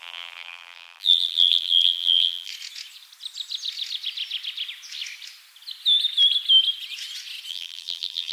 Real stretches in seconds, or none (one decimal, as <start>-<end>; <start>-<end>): 2.5-7.5